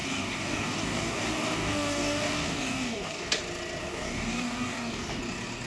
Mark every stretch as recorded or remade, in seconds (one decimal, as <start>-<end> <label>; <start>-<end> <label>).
0.0-3.4 remade; 3.4-3.8 recorded; 3.8-5.2 remade; 5.2-5.7 recorded